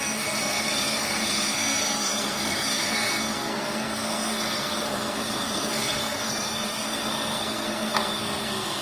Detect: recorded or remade remade